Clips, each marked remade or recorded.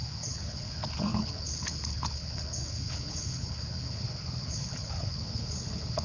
remade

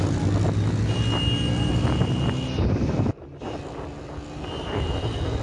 recorded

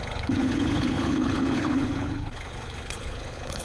remade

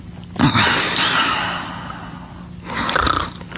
recorded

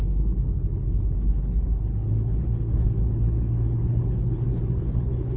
remade